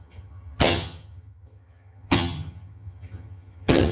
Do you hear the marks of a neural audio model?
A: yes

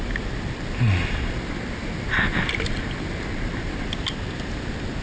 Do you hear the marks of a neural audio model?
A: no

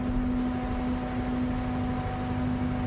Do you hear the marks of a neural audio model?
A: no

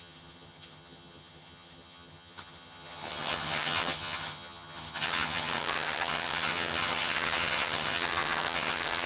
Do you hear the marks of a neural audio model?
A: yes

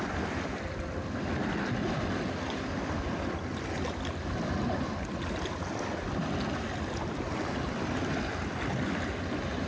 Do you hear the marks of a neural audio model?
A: no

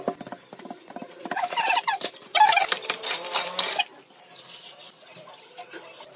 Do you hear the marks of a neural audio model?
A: no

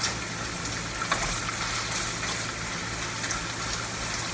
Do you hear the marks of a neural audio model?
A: no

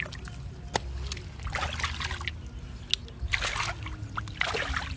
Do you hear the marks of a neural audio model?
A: no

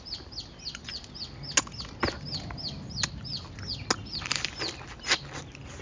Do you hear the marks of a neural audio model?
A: no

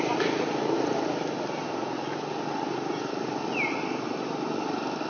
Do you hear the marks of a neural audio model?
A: no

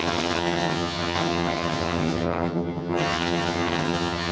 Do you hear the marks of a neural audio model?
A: yes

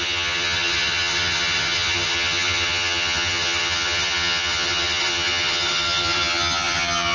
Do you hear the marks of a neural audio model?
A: yes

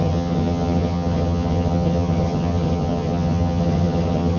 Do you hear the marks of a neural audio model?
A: yes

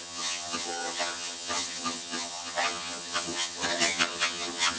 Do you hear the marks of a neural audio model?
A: yes